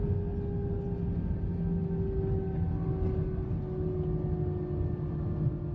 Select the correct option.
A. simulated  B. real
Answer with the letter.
B